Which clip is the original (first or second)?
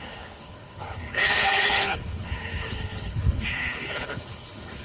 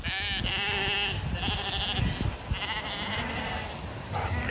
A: second